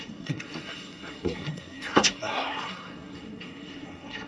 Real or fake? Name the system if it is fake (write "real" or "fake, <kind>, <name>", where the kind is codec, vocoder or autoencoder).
fake, codec, SNAC